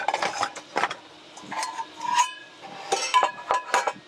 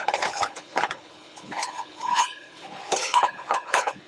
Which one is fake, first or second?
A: second